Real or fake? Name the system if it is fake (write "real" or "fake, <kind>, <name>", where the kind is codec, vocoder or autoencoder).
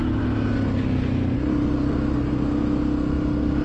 real